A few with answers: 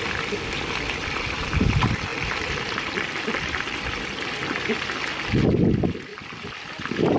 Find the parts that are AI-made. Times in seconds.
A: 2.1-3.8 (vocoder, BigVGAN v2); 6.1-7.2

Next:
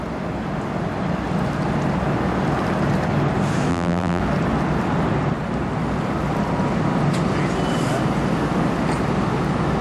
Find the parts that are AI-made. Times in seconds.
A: 3.7-4.2 (vocoder, BigVGAN v2)